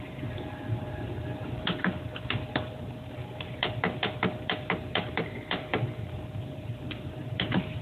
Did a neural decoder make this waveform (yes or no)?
yes